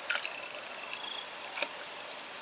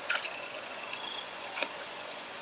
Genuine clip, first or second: first